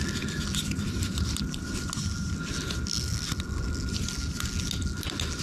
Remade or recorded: recorded